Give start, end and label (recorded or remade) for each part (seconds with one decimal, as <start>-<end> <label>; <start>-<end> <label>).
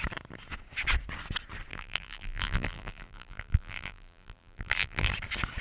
0.0-1.7 recorded; 1.7-5.1 remade; 5.1-5.6 recorded